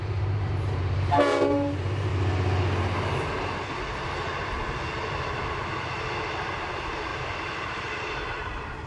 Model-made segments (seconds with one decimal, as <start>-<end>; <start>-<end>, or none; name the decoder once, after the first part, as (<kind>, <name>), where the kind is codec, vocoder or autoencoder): 0.0-2.1 (vocoder, BigVGAN v2); 6.6-8.9